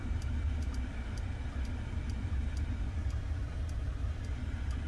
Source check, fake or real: real